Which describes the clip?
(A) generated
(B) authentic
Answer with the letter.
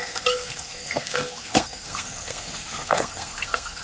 A